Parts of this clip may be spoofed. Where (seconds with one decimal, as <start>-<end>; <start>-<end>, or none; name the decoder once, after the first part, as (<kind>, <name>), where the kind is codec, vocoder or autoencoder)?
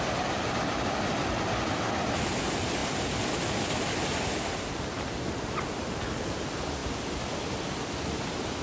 none